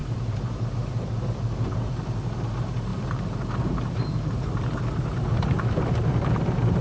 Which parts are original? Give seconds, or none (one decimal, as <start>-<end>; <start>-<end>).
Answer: 1.4-2.9; 5.8-6.8